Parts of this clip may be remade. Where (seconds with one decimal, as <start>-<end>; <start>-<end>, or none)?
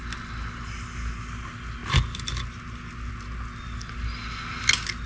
none